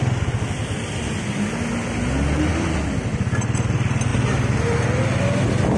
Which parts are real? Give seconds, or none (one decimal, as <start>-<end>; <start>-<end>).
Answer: 0.0-5.8